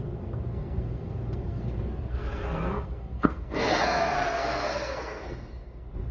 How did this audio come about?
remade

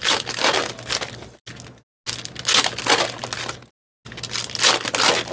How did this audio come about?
recorded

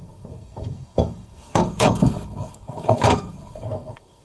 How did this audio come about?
remade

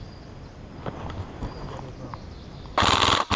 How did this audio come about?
recorded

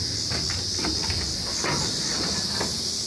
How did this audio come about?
recorded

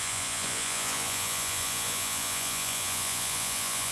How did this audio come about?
remade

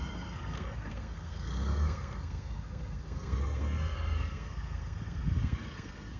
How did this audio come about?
remade